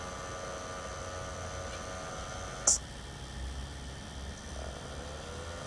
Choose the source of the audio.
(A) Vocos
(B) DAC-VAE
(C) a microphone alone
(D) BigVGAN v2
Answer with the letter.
C